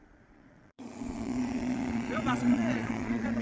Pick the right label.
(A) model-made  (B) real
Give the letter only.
A